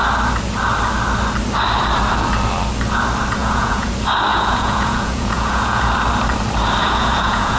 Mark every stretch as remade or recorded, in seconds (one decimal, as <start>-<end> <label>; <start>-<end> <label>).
0.0-3.4 recorded; 3.4-3.9 remade; 3.9-4.3 recorded; 4.3-5.9 remade; 5.9-6.8 recorded; 6.8-7.6 remade